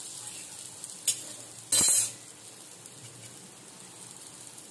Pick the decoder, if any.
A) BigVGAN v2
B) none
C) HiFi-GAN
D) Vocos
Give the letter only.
B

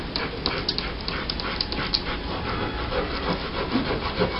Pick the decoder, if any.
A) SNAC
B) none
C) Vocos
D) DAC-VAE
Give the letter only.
B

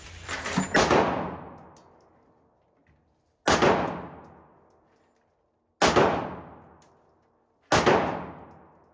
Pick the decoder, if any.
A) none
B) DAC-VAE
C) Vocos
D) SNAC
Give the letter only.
A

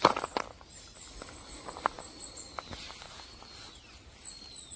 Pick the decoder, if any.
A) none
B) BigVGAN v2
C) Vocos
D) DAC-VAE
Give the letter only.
A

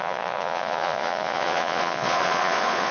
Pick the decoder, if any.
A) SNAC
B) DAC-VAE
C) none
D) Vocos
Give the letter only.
D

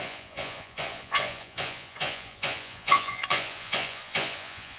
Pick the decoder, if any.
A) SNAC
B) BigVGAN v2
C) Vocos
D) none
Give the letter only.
C